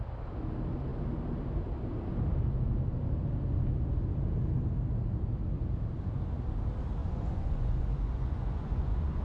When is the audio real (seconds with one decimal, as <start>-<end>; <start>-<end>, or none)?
0.0-7.0